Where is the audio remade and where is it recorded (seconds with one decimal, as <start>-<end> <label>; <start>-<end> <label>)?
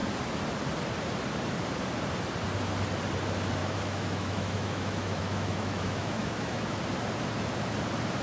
0.0-3.6 recorded; 3.6-6.8 remade; 6.8-8.2 recorded